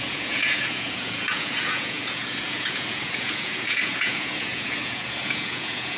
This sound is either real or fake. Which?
fake